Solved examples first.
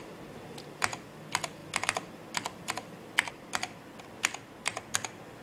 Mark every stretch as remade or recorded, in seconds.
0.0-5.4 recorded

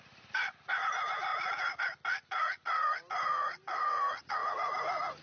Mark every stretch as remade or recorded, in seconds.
0.0-5.2 recorded

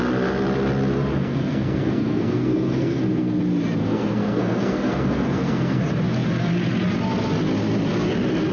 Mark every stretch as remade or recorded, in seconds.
0.0-1.1 recorded; 1.1-3.4 remade; 3.4-3.8 recorded; 3.8-5.8 remade; 5.8-8.5 recorded

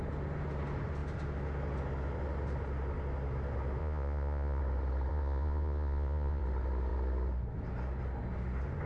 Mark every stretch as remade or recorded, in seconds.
0.0-3.8 recorded; 3.8-4.6 remade; 4.6-5.1 recorded; 5.1-6.4 remade; 6.4-8.9 recorded

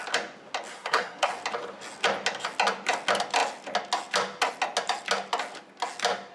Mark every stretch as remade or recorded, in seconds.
0.0-0.7 recorded; 0.7-1.3 remade; 1.3-6.3 recorded